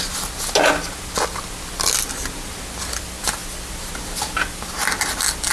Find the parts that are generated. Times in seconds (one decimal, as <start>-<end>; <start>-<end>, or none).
none